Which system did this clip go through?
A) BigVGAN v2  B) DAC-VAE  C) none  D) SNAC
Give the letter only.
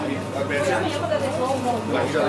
C